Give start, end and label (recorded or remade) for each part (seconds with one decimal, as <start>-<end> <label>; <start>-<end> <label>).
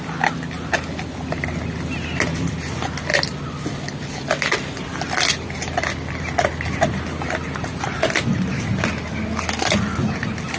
0.0-10.6 recorded